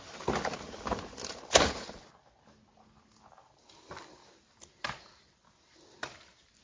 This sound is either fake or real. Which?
real